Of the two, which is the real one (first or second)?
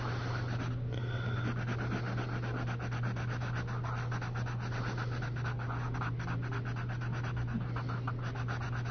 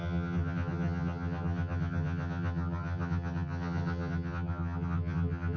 first